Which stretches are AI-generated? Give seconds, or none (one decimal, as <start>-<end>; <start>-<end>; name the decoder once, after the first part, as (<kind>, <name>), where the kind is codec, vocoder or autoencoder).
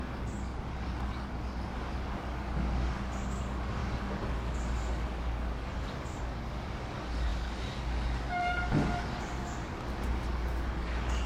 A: 0.0-11.3 (codec, DAC)